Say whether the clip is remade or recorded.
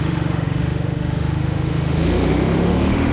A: remade